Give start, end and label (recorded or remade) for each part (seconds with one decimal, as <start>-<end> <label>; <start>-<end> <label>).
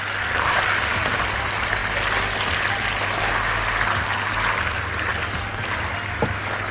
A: 0.0-6.7 recorded